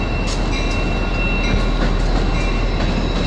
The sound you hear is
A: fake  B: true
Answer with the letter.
B